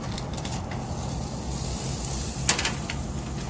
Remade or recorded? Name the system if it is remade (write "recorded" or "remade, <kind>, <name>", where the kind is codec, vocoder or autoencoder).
recorded